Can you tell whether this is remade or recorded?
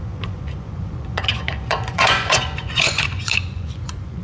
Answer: remade